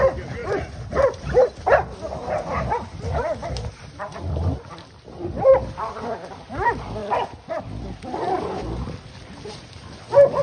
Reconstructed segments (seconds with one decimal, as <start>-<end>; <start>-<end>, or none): none